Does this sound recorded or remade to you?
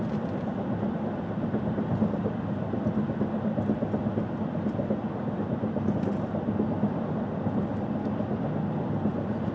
recorded